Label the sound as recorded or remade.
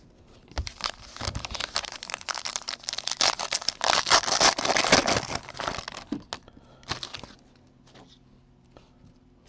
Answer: recorded